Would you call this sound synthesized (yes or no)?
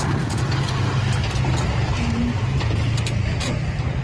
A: no